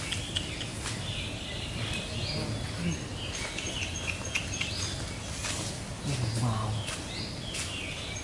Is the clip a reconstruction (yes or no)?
no